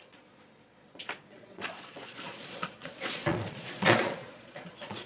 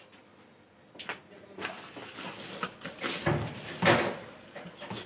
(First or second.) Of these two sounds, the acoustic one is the second